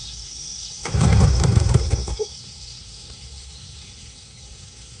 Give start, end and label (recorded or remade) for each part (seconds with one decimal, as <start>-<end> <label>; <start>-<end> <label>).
0.0-5.0 remade